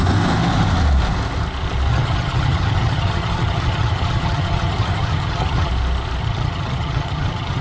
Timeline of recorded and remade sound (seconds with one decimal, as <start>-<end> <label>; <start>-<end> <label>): 0.0-1.9 recorded; 1.9-5.7 remade; 5.7-6.2 recorded; 6.2-7.6 remade